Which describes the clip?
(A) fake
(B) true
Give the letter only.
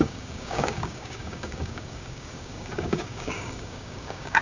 A